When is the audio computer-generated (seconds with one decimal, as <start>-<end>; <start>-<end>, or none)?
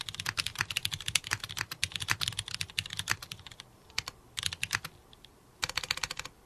0.5-4.4; 5.0-6.5